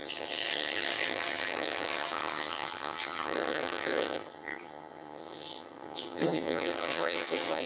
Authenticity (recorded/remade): remade